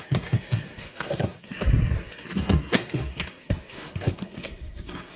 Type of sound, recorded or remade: remade